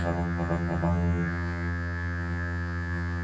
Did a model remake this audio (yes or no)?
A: yes